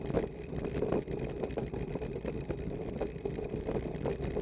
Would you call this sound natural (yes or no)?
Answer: yes